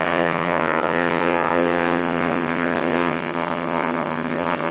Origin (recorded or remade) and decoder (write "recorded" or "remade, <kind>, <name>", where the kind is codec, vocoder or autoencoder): remade, vocoder, HiFi-GAN